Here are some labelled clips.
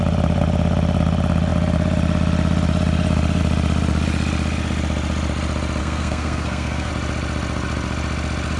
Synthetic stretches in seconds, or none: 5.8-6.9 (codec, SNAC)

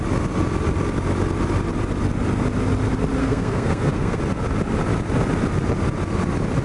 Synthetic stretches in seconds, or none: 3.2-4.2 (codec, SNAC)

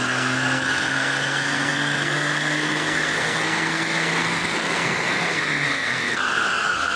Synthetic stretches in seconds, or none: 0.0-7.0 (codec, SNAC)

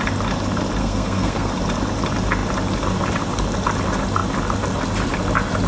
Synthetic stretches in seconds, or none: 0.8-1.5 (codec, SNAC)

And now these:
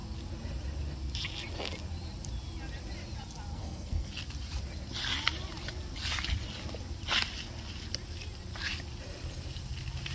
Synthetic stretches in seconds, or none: 3.5-4.1 (codec, SNAC)

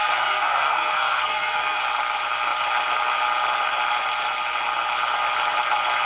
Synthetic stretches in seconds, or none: 0.0-1.8 (codec, SNAC)

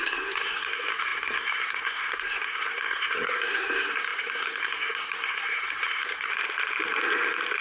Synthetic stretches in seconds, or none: 0.0-6.3 (codec, SNAC)

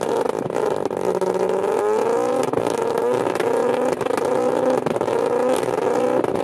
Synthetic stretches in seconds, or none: none